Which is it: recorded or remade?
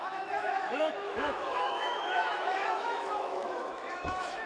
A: remade